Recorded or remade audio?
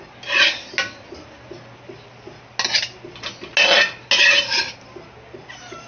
recorded